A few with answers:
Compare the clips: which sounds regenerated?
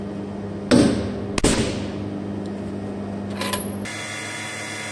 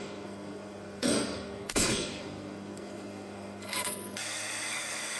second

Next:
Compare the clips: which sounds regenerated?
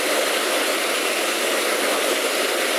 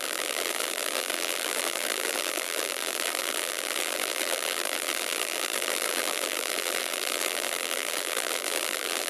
second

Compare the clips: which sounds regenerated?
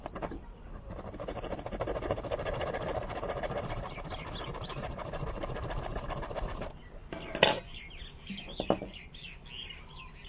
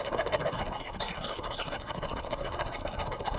second